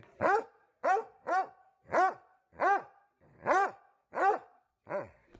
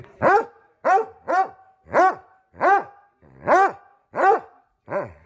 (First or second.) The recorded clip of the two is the second